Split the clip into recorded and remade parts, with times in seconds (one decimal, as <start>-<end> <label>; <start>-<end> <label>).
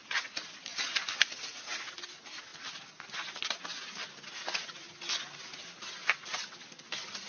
0.0-7.3 recorded